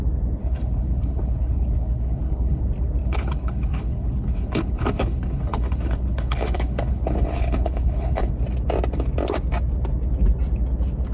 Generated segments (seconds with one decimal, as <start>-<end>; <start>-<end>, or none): 0.4-2.6; 3.0-8.3